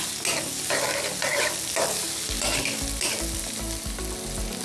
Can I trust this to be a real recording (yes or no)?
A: yes